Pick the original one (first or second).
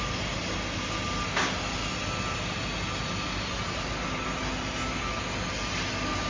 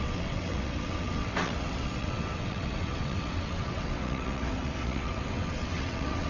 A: first